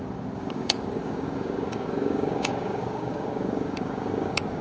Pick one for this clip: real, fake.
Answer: fake